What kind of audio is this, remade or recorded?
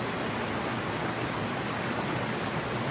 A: recorded